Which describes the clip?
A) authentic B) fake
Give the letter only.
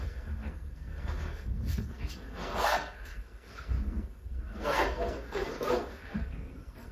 B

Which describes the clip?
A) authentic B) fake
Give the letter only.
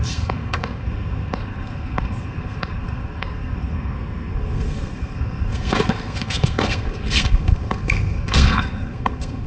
B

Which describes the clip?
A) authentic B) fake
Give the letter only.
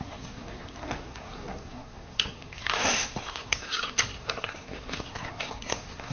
B